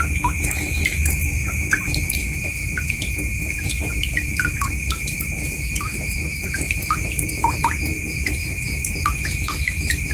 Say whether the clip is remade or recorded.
remade